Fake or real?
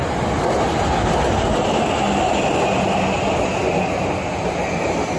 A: real